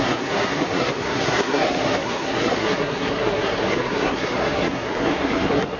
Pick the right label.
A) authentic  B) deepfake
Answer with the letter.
B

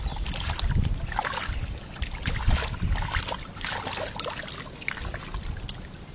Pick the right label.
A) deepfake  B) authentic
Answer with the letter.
B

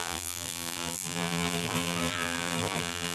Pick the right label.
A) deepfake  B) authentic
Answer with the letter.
A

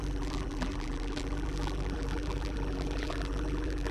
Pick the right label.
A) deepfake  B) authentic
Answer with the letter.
A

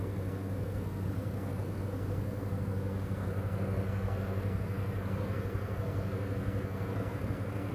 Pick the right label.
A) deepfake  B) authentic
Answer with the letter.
A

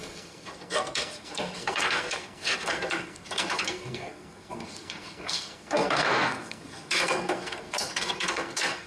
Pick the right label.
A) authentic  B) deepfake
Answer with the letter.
B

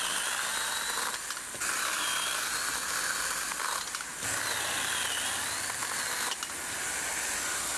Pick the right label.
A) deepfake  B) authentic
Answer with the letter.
B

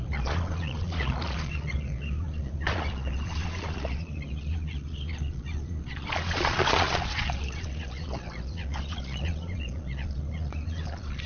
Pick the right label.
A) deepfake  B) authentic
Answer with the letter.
A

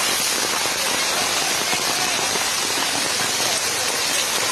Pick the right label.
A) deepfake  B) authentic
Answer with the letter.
B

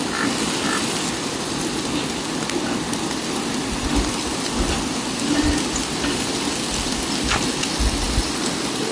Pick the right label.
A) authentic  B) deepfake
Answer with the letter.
A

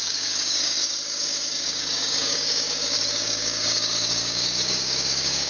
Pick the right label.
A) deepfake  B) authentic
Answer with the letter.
A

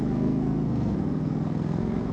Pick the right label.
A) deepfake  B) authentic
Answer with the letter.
A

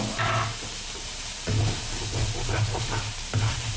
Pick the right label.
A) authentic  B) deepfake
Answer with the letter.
A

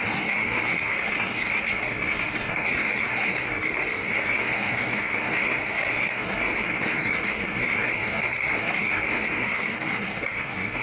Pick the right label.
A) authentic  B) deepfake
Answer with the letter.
B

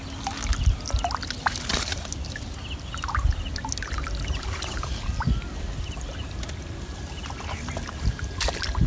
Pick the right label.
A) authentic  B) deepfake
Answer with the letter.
A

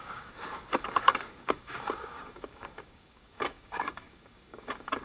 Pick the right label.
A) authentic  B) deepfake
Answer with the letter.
B